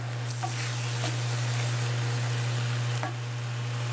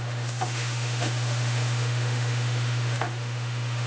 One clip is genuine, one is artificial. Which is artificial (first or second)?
second